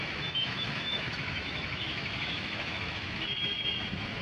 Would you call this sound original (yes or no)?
no